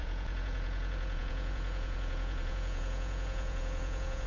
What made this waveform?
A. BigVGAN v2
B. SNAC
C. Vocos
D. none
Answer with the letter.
C